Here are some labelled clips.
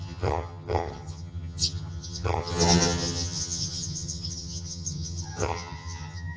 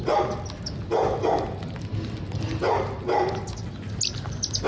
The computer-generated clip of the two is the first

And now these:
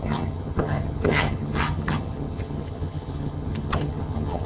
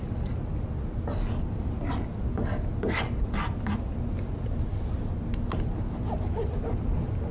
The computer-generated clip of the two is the first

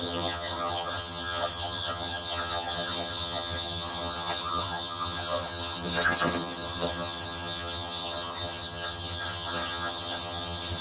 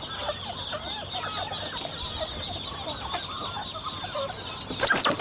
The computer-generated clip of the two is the first